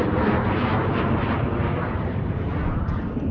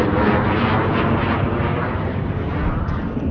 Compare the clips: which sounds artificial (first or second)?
first